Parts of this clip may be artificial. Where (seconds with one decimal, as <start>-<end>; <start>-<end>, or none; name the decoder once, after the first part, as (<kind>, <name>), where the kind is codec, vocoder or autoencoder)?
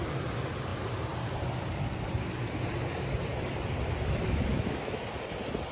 4.5-5.0 (autoencoder, DAC-VAE)